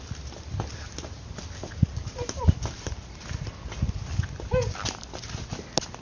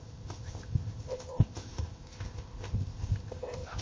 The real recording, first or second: first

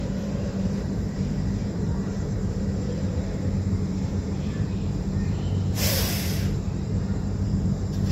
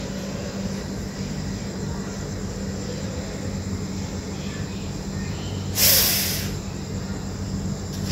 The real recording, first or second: second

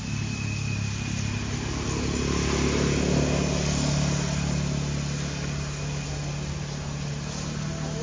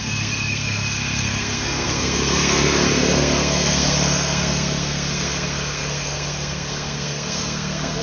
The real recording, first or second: first